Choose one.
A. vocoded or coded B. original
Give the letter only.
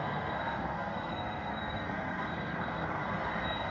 A